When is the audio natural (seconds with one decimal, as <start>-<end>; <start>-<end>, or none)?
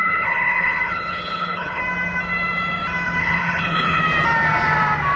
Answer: 1.8-3.2; 4.0-5.2